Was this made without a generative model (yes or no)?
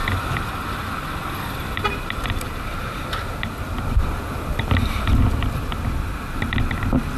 yes